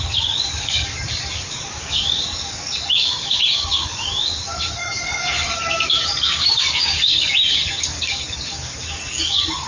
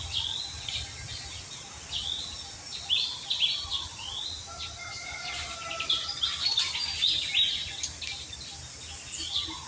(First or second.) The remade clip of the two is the first